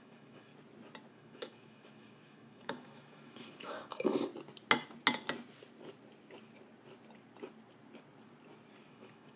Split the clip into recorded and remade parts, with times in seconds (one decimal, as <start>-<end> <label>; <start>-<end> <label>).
0.0-0.5 remade; 0.5-1.1 recorded; 1.1-4.3 remade; 4.3-8.9 recorded; 8.9-9.4 remade